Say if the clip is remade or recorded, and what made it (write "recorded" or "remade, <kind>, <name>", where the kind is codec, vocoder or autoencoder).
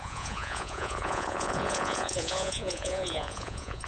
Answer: remade, vocoder, Vocos